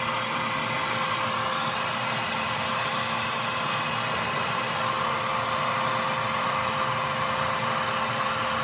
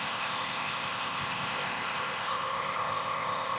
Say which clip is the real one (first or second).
first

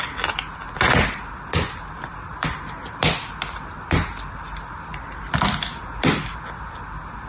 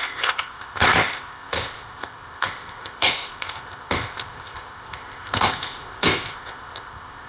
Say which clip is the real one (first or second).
first